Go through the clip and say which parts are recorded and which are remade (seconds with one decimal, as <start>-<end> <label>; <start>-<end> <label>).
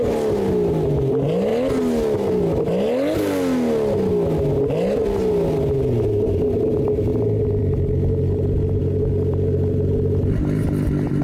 0.0-11.2 recorded